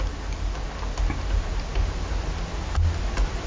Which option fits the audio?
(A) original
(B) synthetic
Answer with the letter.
A